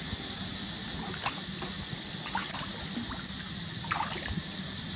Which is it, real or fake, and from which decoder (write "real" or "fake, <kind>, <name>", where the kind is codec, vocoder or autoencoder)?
real